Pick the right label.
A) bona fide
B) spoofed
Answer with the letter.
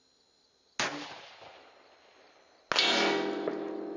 A